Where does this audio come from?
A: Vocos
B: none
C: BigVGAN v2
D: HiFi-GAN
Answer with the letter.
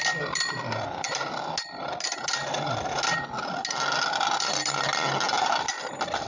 B